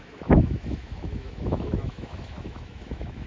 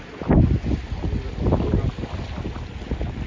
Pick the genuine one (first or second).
second